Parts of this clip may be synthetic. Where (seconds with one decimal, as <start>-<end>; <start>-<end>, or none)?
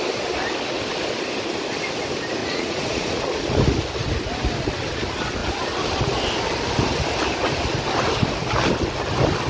2.4-3.4